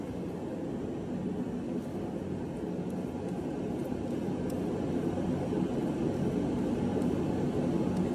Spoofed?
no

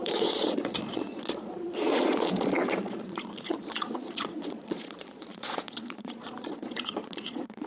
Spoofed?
yes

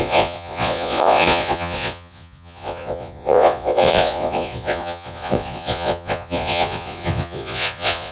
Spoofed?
yes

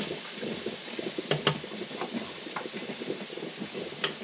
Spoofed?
no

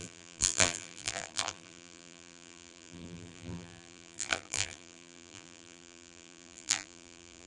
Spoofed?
yes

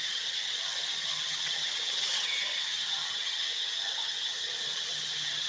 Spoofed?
yes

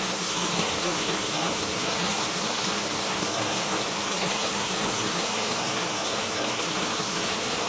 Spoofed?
yes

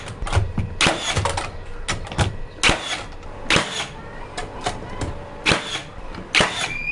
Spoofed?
no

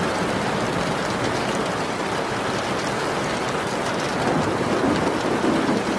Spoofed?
no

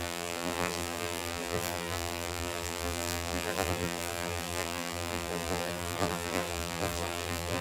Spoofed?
yes